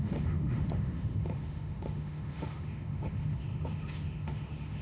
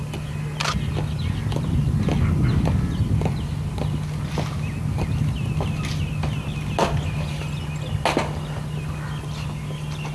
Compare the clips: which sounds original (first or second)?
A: second